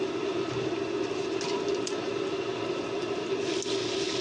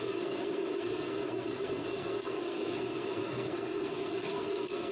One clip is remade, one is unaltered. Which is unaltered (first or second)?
first